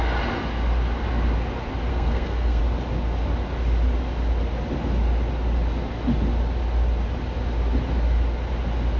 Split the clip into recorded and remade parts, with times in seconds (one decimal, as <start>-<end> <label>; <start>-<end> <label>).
0.0-1.9 recorded; 1.9-2.6 remade; 2.6-9.0 recorded

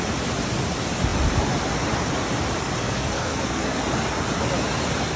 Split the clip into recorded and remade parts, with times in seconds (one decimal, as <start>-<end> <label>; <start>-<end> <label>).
0.0-2.8 recorded; 2.8-3.8 remade; 3.8-5.2 recorded

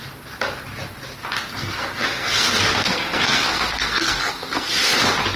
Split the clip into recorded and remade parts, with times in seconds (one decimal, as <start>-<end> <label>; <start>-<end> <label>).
0.0-1.5 recorded; 1.5-4.7 remade; 4.7-5.4 recorded

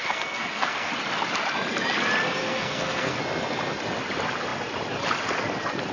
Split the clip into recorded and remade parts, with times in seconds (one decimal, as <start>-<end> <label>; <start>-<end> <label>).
0.0-0.9 remade; 0.9-2.4 recorded; 2.4-3.2 remade; 3.2-5.9 recorded

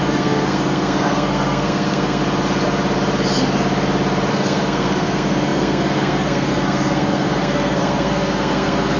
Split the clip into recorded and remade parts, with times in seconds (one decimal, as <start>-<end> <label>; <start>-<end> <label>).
0.0-2.2 remade; 2.2-4.3 recorded; 4.3-9.0 remade

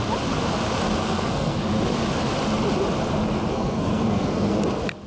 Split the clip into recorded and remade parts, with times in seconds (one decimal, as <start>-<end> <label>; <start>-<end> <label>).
0.0-1.0 recorded; 1.0-1.6 remade; 1.6-3.5 recorded; 3.5-4.6 remade; 4.6-5.1 recorded